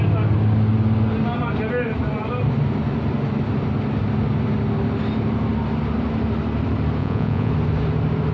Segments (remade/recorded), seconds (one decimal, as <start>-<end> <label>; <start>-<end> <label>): 0.0-7.0 recorded; 7.0-7.5 remade; 7.5-8.3 recorded